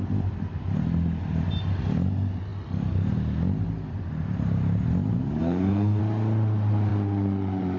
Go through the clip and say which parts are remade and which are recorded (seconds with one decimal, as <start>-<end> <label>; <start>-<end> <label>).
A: 0.0-5.4 recorded; 5.4-6.0 remade; 6.0-7.8 recorded